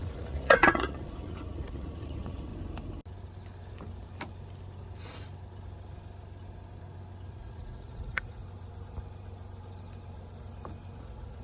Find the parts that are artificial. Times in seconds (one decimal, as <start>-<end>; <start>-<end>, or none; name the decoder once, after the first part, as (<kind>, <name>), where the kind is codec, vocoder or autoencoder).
0.0-2.5 (vocoder, Vocos); 7.3-8.4; 11.0-11.4